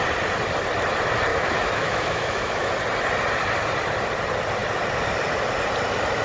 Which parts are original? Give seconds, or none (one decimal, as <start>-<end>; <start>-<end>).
0.0-1.3; 2.7-6.2